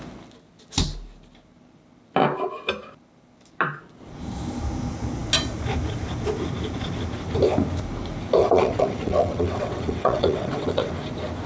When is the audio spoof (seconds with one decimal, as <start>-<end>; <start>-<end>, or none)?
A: 8.4-10.9

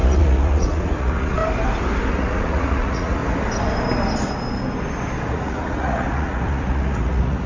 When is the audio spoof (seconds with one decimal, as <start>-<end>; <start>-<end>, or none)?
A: 0.0-1.4; 2.1-3.2; 5.3-7.5

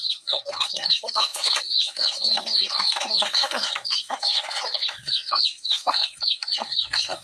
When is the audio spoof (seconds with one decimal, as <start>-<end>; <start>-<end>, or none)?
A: 0.0-7.2

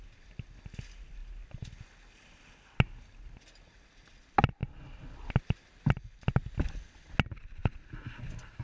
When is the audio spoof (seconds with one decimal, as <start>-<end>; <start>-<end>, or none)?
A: none

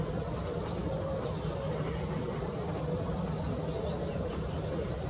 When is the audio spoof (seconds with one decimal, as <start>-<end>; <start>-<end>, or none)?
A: 4.1-5.1

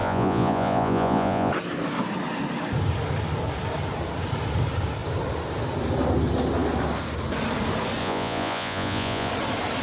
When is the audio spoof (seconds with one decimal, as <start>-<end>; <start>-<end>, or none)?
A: 0.0-1.5; 8.0-9.3

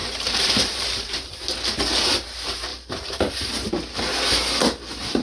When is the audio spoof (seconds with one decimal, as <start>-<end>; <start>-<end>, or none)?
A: 0.0-1.4; 2.7-3.7